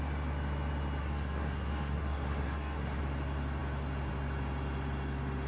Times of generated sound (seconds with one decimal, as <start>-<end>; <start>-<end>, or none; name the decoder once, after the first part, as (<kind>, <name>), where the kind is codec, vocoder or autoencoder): 1.0-3.0 (codec, SNAC)